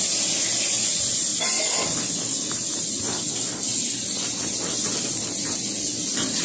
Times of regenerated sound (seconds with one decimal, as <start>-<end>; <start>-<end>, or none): none